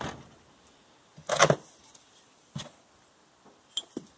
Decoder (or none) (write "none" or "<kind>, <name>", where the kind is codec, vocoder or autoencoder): none